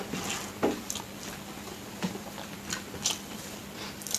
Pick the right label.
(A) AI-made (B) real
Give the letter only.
B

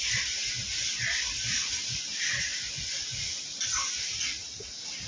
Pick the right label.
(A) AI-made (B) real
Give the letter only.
B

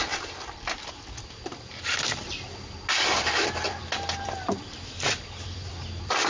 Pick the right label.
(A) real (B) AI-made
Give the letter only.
B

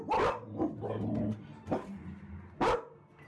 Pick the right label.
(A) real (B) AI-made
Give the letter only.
A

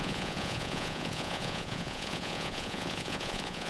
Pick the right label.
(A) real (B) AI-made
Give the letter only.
B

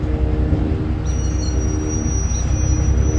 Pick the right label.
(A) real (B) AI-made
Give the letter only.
A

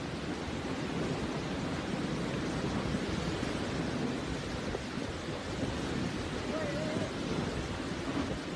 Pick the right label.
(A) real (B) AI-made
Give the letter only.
A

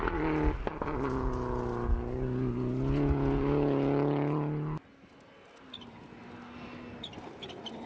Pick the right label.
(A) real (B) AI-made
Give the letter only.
A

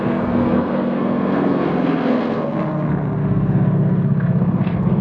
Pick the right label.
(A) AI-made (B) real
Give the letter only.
A